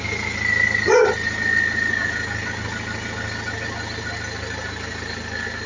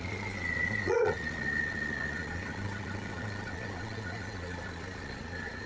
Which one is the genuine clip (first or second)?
first